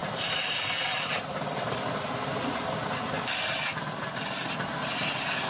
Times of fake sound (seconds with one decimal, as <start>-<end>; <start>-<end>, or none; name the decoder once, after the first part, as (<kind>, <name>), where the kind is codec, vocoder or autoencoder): 0.0-3.3 (vocoder, BigVGAN v2)